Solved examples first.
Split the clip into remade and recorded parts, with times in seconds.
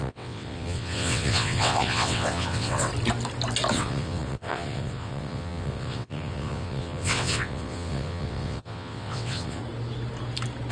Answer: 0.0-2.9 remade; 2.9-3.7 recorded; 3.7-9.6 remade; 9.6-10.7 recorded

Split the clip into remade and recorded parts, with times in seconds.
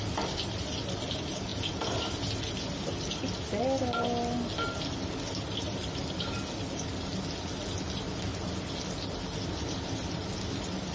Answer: 0.0-10.9 recorded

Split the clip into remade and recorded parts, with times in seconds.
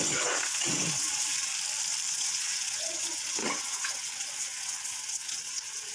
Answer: 0.0-1.5 remade; 1.5-2.1 recorded; 2.1-5.9 remade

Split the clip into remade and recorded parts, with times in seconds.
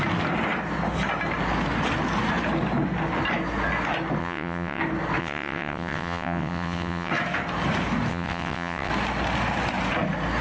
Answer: 0.0-4.2 recorded; 4.2-4.8 remade; 4.8-5.2 recorded; 5.2-7.1 remade; 7.1-8.1 recorded; 8.1-8.9 remade; 8.9-10.4 recorded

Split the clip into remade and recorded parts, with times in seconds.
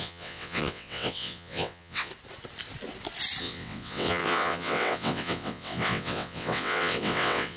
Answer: 0.0-2.1 remade; 2.1-3.4 recorded; 3.4-7.6 remade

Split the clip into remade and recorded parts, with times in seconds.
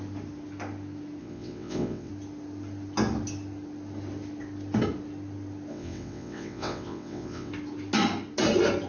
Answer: 0.0-1.2 recorded; 1.2-2.1 remade; 2.1-5.7 recorded; 5.7-7.5 remade; 7.5-8.9 recorded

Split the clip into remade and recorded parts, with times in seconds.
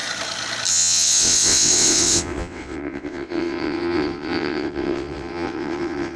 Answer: 0.0-0.7 recorded; 0.7-6.2 remade